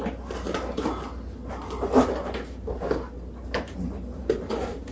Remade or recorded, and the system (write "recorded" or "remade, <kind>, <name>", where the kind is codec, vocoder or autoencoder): recorded